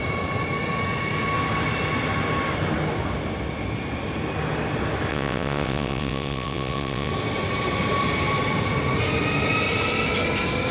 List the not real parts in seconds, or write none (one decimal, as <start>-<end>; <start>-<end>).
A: 5.1-7.1